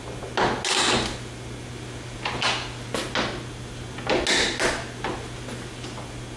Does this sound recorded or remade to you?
recorded